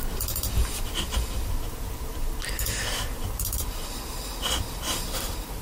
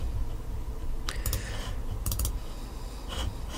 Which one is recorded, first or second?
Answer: second